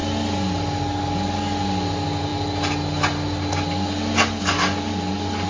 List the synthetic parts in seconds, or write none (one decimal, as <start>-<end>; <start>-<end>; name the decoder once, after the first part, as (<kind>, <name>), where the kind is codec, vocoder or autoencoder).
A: none